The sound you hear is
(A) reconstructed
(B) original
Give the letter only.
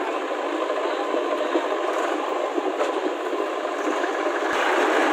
B